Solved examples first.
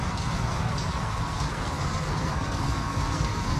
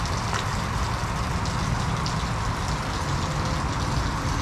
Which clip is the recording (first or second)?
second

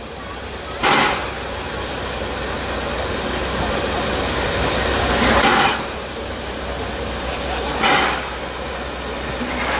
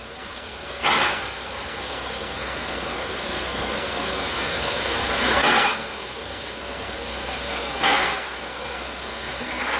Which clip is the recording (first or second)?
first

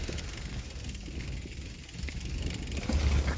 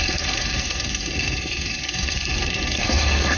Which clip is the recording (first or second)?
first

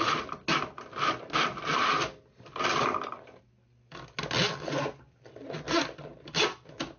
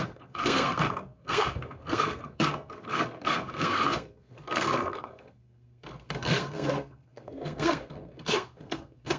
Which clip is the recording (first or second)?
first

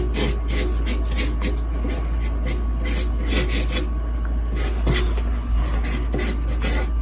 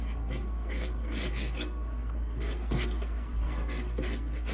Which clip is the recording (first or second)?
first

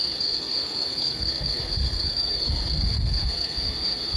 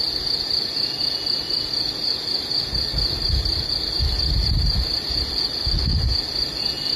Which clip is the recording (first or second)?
second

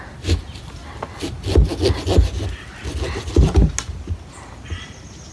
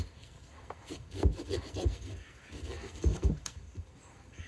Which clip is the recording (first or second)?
first